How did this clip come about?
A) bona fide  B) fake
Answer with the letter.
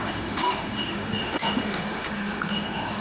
B